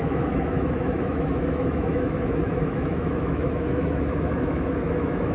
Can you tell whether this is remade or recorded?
remade